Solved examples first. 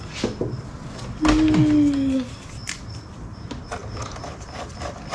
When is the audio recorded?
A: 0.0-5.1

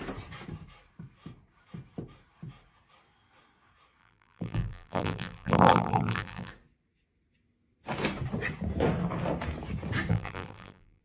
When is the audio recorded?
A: 0.0-4.0; 6.5-10.1

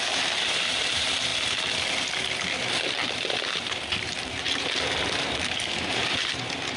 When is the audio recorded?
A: 1.3-3.1

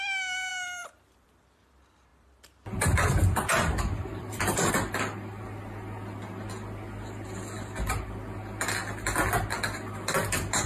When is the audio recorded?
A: 0.0-0.5; 1.7-2.1; 4.7-10.7

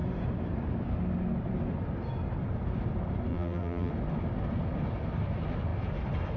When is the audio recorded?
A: 0.0-3.3; 3.9-6.4

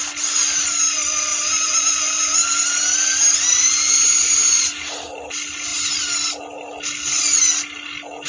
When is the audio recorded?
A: 0.0-1.3; 5.3-8.3